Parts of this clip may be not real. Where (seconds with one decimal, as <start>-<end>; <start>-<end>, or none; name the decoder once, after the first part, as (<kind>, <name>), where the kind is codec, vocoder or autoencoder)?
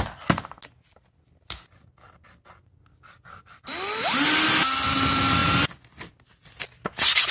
none